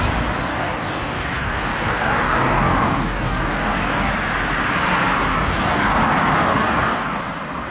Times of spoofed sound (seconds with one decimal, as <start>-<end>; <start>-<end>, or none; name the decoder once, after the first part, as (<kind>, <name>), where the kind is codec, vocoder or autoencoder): 0.5-4.1 (codec, DAC); 5.3-5.9; 6.5-7.2